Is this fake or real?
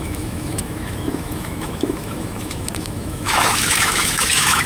fake